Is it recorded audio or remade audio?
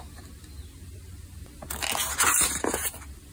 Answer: recorded